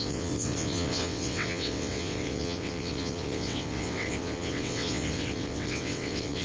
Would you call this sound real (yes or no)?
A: no